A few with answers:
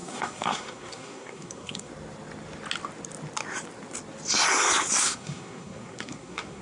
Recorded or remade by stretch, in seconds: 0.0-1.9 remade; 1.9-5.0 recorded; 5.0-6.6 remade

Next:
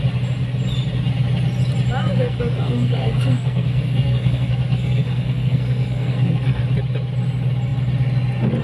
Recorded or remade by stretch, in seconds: 0.0-2.0 recorded; 2.0-6.6 remade; 6.6-8.6 recorded

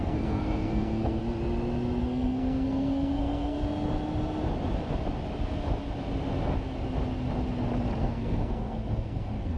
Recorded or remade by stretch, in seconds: 0.0-1.2 remade; 1.2-2.0 recorded; 2.0-3.6 remade; 3.6-8.0 recorded; 8.0-9.6 remade